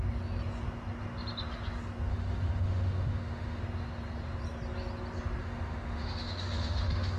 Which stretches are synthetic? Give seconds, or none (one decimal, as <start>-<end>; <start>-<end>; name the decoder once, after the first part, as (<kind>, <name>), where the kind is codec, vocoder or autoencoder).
2.1-3.6 (autoencoder, DAC-VAE); 5.4-7.2